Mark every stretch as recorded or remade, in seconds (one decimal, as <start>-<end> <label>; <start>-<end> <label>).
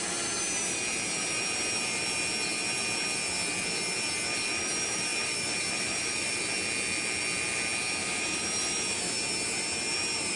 0.0-5.1 recorded; 5.1-6.4 remade; 6.4-8.0 recorded; 8.0-9.0 remade; 9.0-10.4 recorded